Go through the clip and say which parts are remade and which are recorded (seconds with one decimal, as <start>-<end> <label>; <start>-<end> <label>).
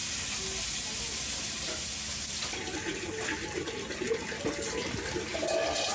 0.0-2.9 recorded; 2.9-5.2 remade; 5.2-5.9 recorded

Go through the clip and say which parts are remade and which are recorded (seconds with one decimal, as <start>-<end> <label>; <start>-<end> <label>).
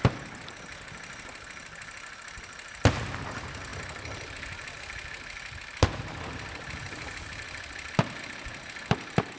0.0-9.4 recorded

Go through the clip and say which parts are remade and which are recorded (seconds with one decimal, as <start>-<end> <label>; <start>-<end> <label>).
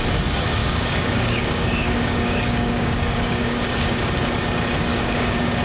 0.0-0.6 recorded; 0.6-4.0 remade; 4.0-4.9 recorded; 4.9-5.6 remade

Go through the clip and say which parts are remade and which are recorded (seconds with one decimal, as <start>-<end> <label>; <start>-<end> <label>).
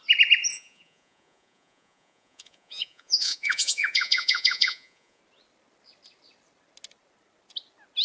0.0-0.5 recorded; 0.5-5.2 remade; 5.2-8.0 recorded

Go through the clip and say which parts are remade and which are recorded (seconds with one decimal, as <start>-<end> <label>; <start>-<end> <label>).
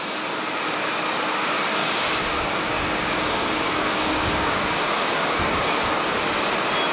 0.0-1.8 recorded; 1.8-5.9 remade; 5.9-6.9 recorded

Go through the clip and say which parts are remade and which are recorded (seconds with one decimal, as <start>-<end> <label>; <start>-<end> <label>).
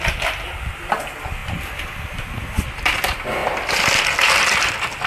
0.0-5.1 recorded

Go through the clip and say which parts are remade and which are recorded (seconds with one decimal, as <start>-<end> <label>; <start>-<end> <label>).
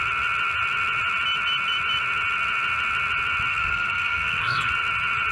0.0-3.5 recorded; 3.5-4.7 remade; 4.7-5.3 recorded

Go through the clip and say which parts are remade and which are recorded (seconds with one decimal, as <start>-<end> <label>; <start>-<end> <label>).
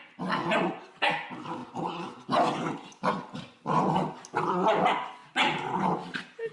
0.0-1.6 recorded; 1.6-3.9 remade; 3.9-6.5 recorded